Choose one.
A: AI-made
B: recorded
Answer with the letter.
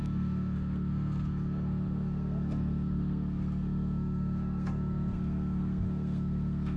A